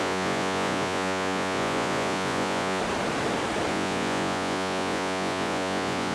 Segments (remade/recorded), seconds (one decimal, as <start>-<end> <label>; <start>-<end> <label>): 0.0-2.8 remade; 2.8-3.7 recorded; 3.7-6.1 remade